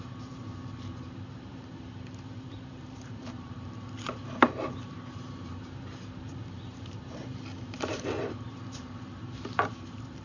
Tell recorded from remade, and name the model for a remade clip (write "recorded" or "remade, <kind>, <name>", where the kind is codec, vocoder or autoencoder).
remade, vocoder, BigVGAN v2